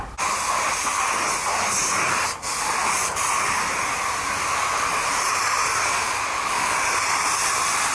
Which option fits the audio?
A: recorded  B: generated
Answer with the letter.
A